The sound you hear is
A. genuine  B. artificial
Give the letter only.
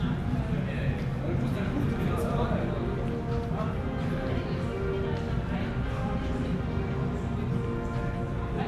A